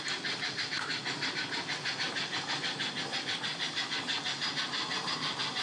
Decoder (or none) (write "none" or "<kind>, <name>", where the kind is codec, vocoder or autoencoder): none